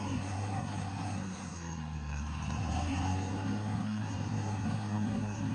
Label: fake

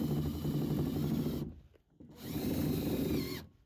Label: real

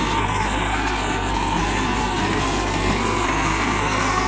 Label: fake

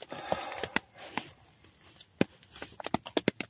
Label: real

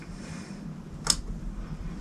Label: real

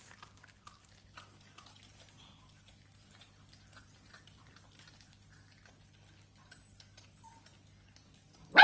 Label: real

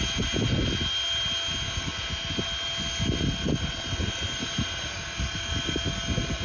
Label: real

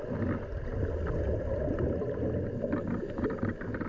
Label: real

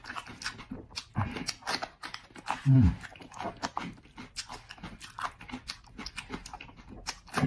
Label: real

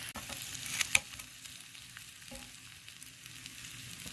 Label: real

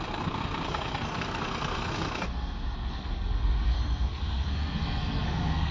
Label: fake